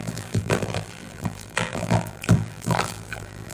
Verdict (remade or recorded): remade